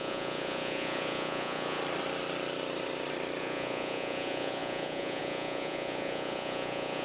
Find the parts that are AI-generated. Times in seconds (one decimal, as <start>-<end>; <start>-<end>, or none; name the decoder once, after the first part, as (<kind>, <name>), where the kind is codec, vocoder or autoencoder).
0.0-1.8 (vocoder, Vocos); 3.4-7.0